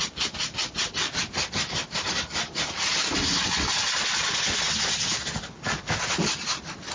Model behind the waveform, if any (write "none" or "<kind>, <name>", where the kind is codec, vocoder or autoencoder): none